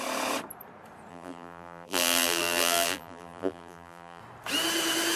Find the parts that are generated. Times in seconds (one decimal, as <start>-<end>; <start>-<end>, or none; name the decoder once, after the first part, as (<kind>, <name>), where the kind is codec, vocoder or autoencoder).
1.1-4.2 (vocoder, BigVGAN v2)